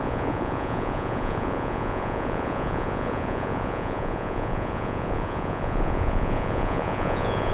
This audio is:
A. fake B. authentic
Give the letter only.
A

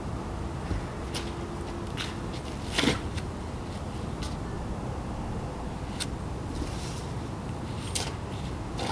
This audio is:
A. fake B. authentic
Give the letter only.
B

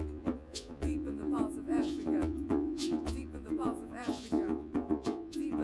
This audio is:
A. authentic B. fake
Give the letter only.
B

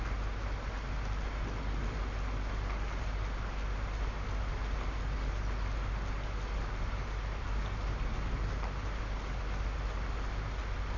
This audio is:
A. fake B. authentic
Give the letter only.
B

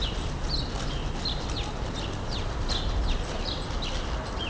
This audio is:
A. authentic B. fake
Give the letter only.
A